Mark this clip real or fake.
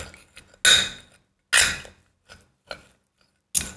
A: real